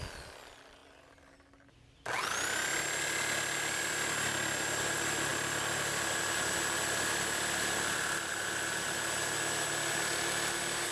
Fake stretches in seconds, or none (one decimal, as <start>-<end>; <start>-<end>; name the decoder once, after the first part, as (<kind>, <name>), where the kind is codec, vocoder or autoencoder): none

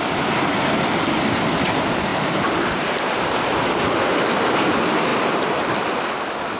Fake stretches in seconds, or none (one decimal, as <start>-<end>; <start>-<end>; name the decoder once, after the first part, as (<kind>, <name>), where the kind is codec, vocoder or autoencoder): none

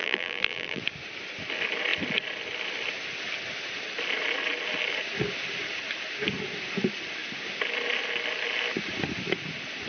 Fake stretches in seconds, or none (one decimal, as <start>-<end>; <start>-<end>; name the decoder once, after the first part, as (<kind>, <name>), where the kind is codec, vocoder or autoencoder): 0.0-0.8 (vocoder, BigVGAN v2)

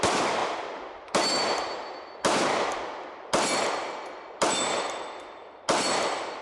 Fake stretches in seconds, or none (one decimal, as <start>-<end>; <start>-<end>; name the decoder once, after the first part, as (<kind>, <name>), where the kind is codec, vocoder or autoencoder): none

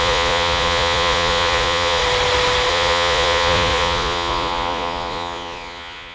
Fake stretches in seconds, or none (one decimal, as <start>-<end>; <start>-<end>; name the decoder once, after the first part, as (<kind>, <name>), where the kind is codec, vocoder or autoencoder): 0.0-2.0 (vocoder, Vocos); 2.7-6.1